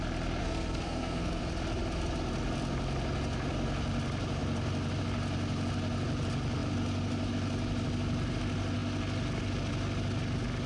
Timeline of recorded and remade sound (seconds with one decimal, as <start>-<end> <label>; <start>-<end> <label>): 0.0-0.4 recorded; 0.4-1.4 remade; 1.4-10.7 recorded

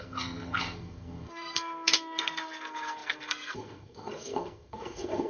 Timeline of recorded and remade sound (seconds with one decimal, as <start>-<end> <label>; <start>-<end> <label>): 0.0-5.3 remade

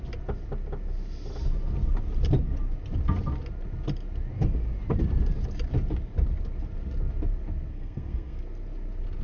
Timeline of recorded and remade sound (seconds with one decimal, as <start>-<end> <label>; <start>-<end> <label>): 0.0-7.7 recorded; 7.7-8.4 remade; 8.4-9.2 recorded